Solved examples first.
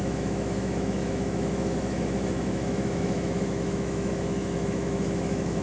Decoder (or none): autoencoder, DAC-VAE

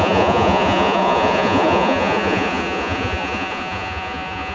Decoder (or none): vocoder, Vocos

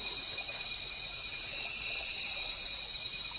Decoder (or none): vocoder, Vocos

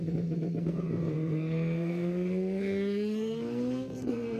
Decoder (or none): codec, SNAC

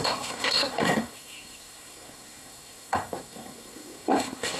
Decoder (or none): codec, SNAC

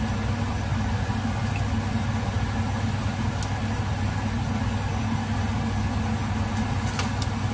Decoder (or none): none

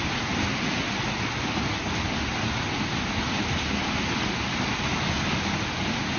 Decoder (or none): none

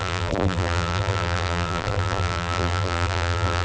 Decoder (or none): vocoder, BigVGAN v2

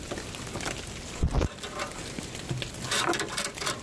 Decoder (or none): none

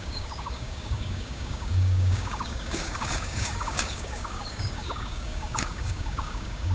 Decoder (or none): codec, DAC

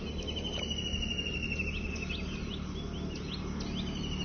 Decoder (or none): none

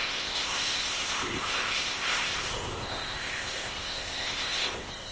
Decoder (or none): codec, ZipCodec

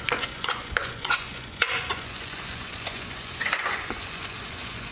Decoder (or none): vocoder, Vocos